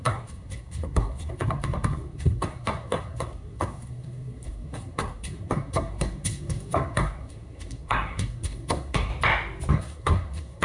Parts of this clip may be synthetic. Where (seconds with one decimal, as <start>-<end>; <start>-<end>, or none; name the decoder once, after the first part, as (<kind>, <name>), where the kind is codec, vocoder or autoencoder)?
0.0-9.1 (codec, SNAC); 9.7-10.6